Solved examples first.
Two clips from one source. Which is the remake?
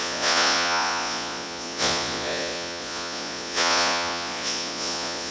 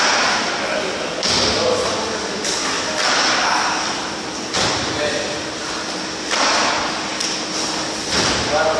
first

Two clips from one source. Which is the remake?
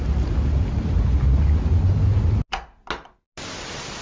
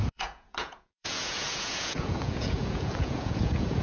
second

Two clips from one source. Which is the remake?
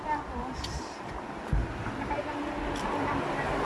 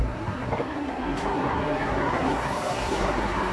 second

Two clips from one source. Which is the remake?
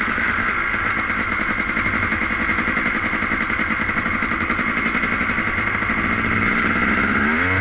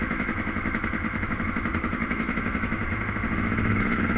second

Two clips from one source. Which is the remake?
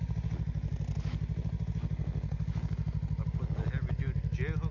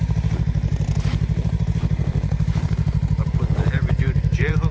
second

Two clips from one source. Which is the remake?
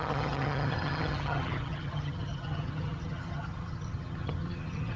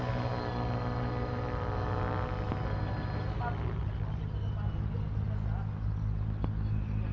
first